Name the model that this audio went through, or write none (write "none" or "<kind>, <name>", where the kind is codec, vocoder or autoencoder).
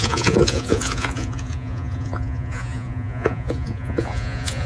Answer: vocoder, Vocos